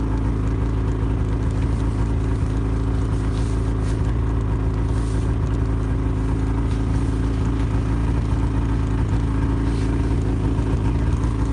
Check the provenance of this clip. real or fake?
real